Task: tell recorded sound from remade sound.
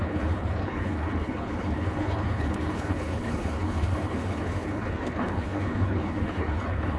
remade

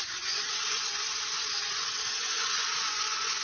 remade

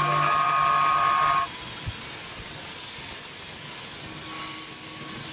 recorded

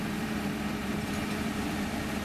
remade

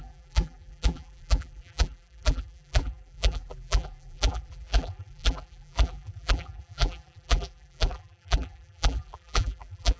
remade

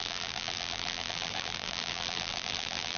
remade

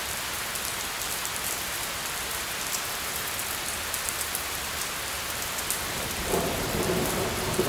remade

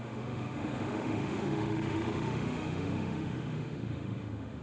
remade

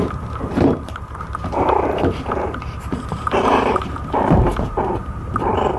remade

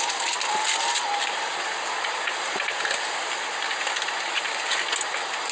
recorded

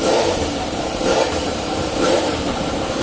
remade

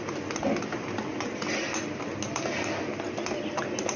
recorded